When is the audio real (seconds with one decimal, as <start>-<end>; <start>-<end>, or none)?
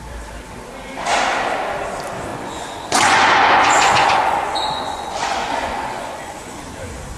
0.0-2.3; 6.6-7.2